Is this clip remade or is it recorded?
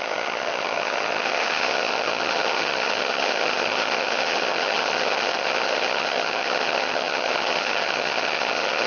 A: remade